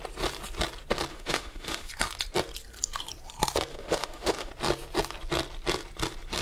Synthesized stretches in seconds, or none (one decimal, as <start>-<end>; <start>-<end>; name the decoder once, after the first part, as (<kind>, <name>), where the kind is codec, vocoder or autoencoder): 1.1-1.9 (autoencoder, DAC-VAE); 3.7-4.5